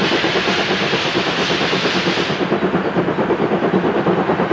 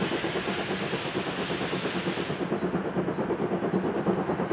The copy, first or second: first